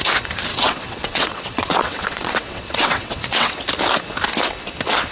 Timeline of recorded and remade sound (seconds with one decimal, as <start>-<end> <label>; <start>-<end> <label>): 0.0-0.5 recorded; 0.5-3.6 remade; 3.6-5.1 recorded